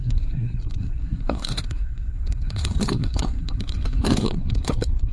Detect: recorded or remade remade